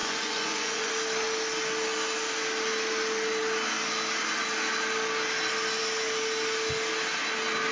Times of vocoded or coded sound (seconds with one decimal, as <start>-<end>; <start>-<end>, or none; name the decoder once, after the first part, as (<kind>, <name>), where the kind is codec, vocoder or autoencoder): 0.0-0.9 (vocoder, Vocos)